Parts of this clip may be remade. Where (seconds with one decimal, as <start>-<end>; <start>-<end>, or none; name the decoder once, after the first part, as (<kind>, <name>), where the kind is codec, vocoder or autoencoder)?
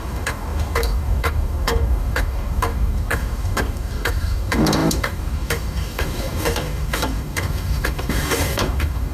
0.0-9.1 (codec, DAC)